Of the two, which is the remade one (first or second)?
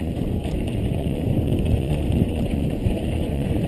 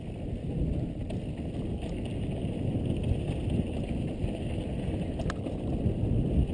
first